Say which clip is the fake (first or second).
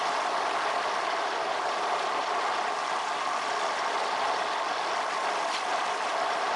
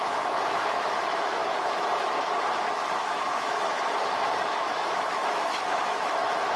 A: second